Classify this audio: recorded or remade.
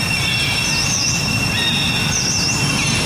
recorded